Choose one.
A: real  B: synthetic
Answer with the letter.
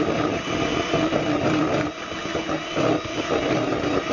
A